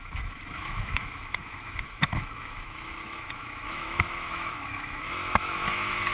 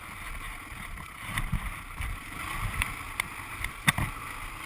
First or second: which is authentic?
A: second